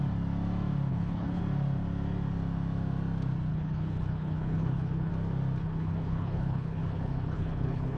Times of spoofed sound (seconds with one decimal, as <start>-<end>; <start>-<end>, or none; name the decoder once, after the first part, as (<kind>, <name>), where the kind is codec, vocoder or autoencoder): 0.9-1.4 (codec, HILCodec); 3.5-5.1; 5.6-8.0